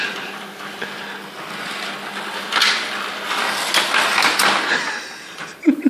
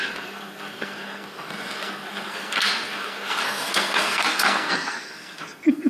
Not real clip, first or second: second